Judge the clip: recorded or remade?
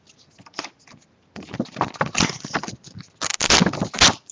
recorded